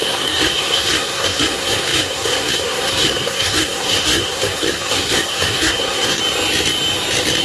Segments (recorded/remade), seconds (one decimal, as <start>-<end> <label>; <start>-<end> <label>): 0.0-6.2 remade; 6.2-7.4 recorded